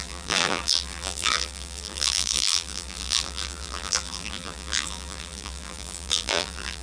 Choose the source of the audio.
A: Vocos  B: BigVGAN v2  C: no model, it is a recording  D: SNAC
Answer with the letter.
B